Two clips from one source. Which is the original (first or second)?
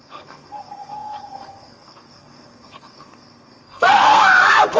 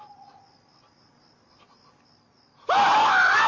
second